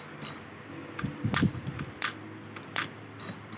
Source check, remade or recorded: remade